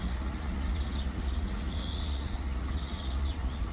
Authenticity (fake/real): fake